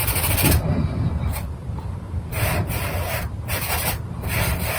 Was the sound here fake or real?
fake